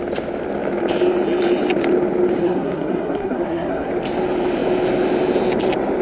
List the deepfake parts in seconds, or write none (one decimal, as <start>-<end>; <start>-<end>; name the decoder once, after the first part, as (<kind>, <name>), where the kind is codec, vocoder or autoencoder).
2.4-3.9 (codec, SNAC)